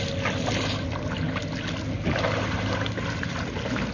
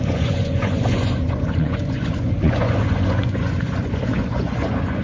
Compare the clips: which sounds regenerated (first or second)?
second